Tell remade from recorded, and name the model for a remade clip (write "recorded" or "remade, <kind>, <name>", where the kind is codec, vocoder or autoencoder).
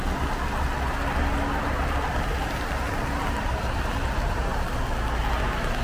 recorded